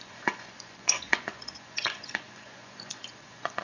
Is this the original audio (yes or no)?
no